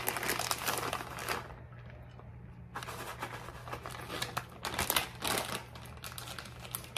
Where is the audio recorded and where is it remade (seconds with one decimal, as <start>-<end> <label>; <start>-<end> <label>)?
0.0-7.0 recorded